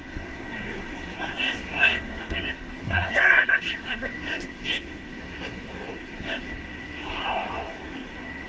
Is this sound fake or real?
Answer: fake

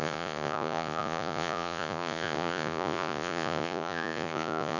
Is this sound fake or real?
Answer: fake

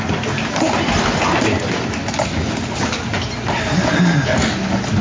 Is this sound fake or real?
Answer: real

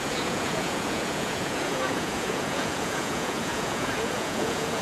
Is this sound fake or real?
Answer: fake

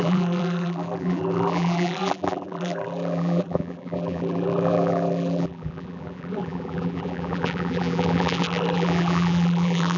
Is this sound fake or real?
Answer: fake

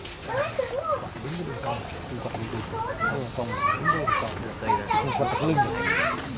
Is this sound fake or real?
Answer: real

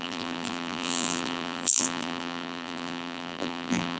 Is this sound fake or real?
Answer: fake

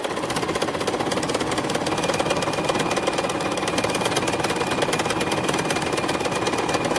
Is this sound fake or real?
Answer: real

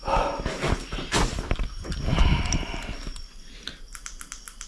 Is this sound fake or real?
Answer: real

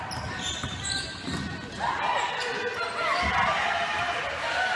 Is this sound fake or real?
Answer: real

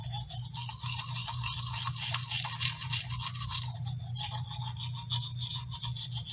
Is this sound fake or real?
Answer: real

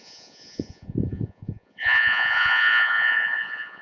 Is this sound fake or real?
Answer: fake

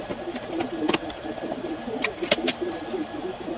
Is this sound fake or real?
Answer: real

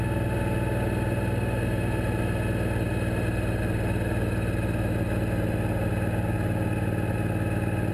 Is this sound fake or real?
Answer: real